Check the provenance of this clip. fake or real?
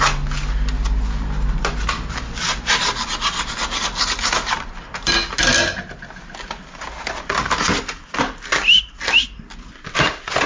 real